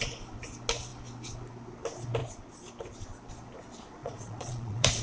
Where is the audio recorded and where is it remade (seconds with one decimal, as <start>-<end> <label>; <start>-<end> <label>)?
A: 0.0-4.0 recorded; 4.0-5.0 remade